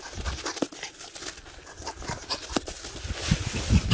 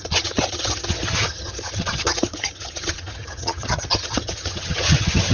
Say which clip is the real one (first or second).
first